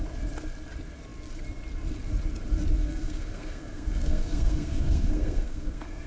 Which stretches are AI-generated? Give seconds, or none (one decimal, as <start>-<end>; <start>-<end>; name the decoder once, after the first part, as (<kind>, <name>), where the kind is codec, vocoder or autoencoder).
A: 2.8-6.1 (codec, SNAC)